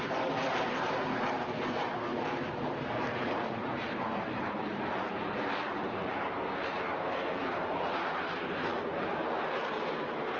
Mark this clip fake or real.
fake